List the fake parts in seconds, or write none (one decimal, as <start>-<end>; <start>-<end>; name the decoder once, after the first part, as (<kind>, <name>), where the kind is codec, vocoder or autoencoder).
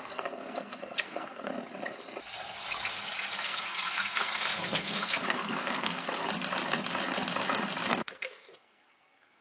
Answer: 0.0-1.5 (codec, SNAC); 3.4-6.2; 7.9-9.4